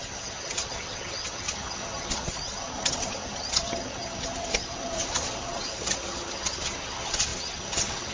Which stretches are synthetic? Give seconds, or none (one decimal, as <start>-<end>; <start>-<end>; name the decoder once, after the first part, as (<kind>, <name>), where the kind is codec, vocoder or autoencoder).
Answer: 0.0-8.1 (vocoder, HiFi-GAN)